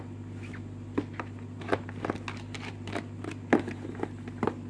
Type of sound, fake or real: real